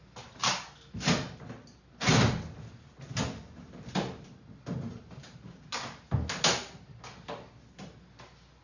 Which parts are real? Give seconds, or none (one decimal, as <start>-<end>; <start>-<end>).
0.0-8.6